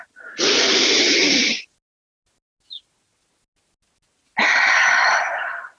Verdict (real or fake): real